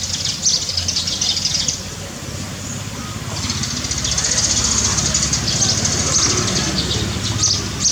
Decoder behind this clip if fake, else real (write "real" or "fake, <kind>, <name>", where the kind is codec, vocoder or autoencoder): real